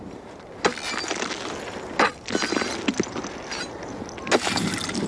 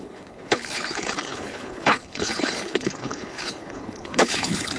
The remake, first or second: second